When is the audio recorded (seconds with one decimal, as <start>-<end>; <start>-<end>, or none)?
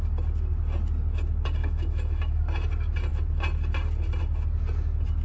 0.0-1.6; 2.4-5.2